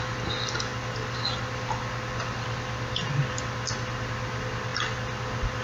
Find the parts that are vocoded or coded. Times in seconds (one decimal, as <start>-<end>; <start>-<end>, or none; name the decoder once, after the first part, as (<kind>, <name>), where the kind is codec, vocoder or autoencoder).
none